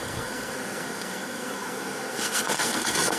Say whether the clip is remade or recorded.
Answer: remade